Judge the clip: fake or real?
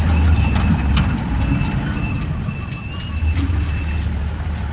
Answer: real